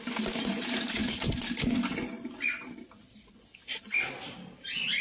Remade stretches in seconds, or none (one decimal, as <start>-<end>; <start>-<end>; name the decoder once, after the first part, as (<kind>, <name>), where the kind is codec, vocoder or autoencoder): none